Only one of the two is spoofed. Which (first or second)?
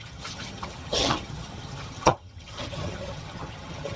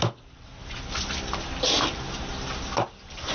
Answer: first